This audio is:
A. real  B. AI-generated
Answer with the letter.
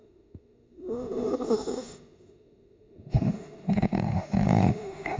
B